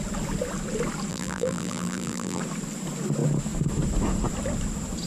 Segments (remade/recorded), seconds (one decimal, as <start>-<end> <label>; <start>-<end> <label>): 0.0-1.1 recorded; 1.1-2.4 remade; 2.4-5.1 recorded